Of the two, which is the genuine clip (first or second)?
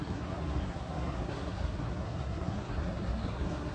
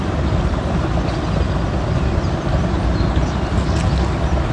second